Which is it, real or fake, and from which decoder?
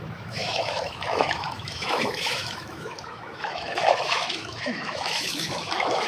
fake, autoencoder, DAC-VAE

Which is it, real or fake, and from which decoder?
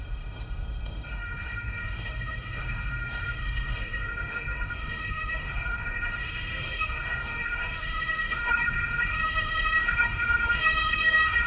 fake, autoencoder, DAC-VAE